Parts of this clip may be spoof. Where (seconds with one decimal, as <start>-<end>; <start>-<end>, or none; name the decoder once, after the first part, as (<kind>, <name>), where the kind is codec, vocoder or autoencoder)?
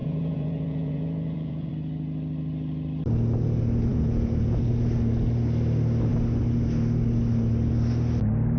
0.0-1.7 (vocoder, Vocos); 3.9-4.6